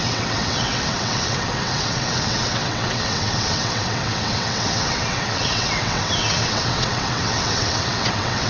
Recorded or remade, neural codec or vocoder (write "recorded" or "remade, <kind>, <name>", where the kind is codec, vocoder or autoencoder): remade, vocoder, WaveNeXt